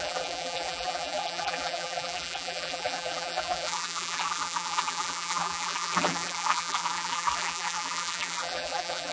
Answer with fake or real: fake